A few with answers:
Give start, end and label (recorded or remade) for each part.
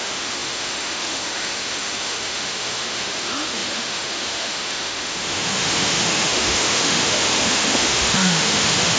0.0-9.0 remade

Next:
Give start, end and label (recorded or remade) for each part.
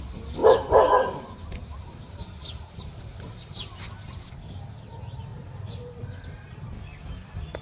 0.0-0.4 recorded; 0.4-3.8 remade; 3.8-5.3 recorded; 5.3-6.5 remade; 6.5-7.6 recorded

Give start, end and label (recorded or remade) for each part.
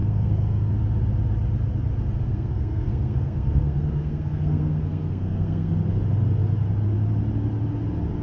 0.0-0.7 remade; 0.7-2.3 recorded; 2.3-5.7 remade; 5.7-8.2 recorded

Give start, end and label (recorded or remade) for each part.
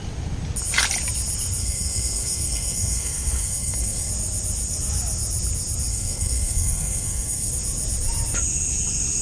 0.0-1.6 recorded; 1.6-4.1 remade; 4.1-5.9 recorded; 5.9-7.5 remade; 7.5-9.2 recorded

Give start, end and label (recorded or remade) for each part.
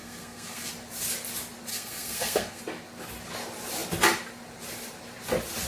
0.0-0.7 remade; 0.7-1.7 recorded; 1.7-2.6 remade; 2.6-5.7 recorded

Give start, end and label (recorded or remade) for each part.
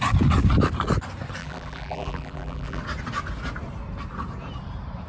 0.0-1.4 recorded; 1.4-2.8 remade; 2.8-5.1 recorded